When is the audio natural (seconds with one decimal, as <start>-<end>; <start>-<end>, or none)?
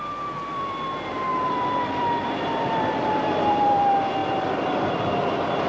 0.0-1.3; 3.6-4.2; 4.9-5.7